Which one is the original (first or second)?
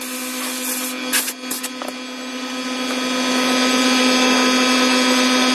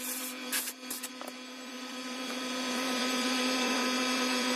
first